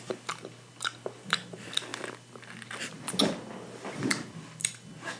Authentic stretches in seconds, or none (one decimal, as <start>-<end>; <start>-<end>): 0.0-5.2